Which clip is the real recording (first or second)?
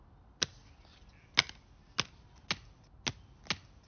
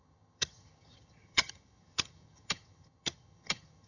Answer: first